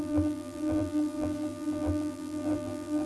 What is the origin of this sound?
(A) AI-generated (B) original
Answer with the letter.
A